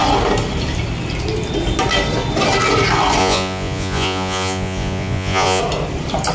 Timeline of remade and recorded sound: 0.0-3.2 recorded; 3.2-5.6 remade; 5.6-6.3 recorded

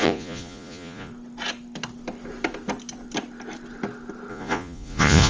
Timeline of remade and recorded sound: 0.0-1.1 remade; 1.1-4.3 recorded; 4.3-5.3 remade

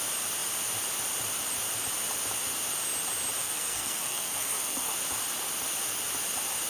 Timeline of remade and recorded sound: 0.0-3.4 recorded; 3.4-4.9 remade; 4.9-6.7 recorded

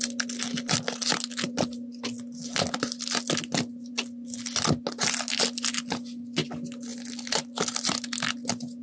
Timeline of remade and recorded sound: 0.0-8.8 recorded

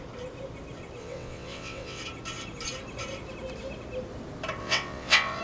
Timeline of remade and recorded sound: 0.0-1.0 recorded; 1.0-2.0 remade; 2.0-4.6 recorded; 4.6-5.4 remade

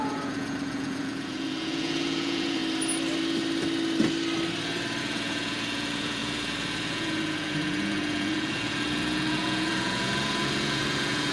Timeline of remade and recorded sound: 0.0-2.6 remade; 2.6-5.0 recorded; 5.0-11.3 remade

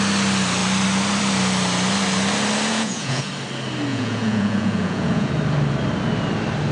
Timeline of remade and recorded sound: 0.0-2.7 recorded; 2.7-3.3 remade; 3.3-3.9 recorded; 3.9-5.3 remade; 5.3-6.7 recorded

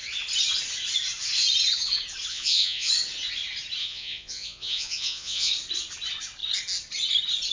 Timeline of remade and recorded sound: 0.0-2.3 recorded; 2.3-2.9 remade; 2.9-3.8 recorded; 3.8-5.5 remade; 5.5-7.5 recorded